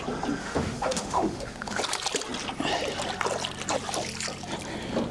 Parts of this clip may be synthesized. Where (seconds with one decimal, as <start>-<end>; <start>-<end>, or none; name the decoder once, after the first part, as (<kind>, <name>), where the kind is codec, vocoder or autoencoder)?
0.4-1.8 (autoencoder, DAC-VAE)